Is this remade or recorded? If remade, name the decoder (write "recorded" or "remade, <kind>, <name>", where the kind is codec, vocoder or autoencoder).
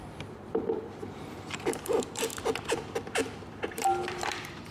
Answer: remade, vocoder, BigVGAN v2